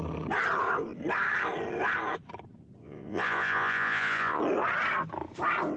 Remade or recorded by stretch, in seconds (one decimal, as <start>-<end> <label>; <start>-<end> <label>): 0.0-2.8 recorded; 2.8-4.4 remade; 4.4-5.8 recorded